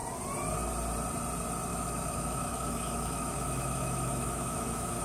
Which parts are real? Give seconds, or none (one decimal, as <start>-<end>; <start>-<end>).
0.0-1.7